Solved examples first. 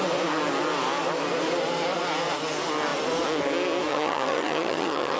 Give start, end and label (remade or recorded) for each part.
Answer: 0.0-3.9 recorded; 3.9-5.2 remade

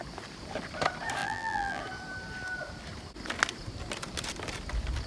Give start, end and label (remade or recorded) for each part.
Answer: 0.0-1.2 recorded; 1.2-1.8 remade; 1.8-5.1 recorded

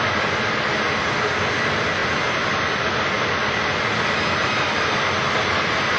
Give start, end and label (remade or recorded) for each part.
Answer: 0.0-6.0 recorded

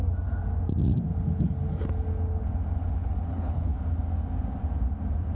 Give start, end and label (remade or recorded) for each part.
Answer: 0.0-3.3 recorded; 3.3-3.8 remade; 3.8-5.3 recorded

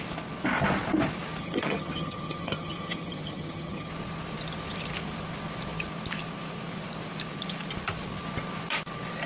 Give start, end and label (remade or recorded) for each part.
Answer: 0.0-1.4 recorded; 1.4-3.9 remade; 3.9-9.3 recorded

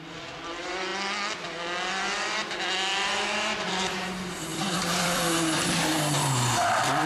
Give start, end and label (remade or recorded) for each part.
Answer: 0.0-4.5 recorded; 4.5-5.9 remade; 5.9-7.1 recorded